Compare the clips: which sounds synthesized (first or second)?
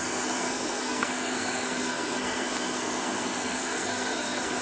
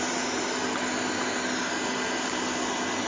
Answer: first